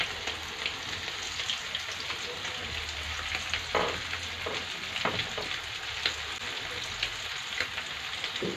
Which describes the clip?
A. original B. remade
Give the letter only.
A